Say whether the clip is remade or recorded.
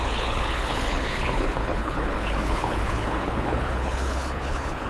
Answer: remade